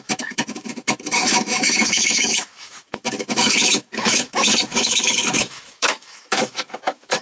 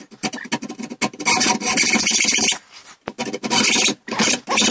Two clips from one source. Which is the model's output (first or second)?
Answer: first